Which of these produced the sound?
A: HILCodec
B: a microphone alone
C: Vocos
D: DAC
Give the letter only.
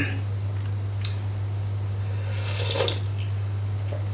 B